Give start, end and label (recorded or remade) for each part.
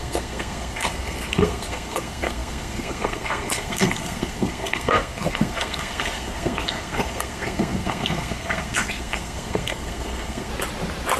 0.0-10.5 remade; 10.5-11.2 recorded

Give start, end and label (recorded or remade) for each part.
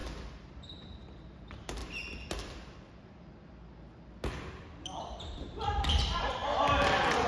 0.0-0.5 recorded; 0.5-1.8 remade; 1.8-5.2 recorded; 5.2-6.4 remade; 6.4-7.3 recorded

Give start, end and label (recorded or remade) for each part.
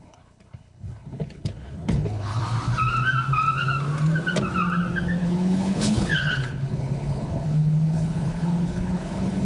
0.0-2.4 remade; 2.4-5.2 recorded; 5.2-9.4 remade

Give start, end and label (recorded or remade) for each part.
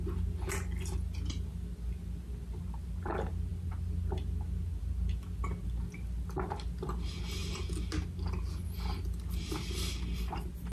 0.0-10.7 recorded